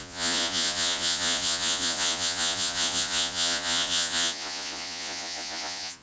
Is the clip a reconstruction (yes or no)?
yes